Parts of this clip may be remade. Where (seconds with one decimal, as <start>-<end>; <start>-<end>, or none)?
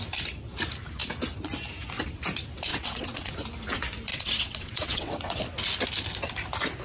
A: 2.7-3.3; 4.1-5.4